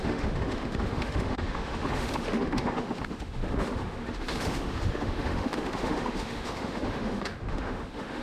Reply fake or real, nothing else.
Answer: fake